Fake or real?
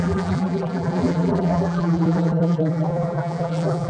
fake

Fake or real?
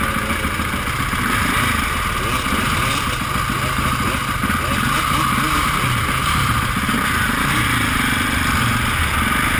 real